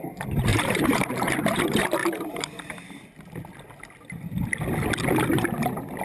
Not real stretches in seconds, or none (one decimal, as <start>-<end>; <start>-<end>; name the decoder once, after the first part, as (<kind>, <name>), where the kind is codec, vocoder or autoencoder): 0.5-1.6 (vocoder, BigVGAN v2); 2.0-2.6